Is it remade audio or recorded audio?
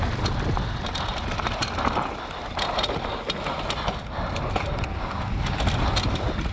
recorded